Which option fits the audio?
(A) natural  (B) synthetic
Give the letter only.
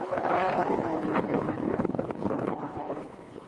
B